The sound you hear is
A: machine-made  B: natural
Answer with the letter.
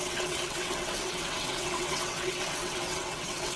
A